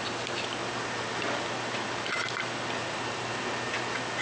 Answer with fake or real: real